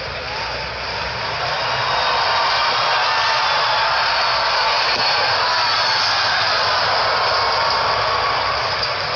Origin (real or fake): real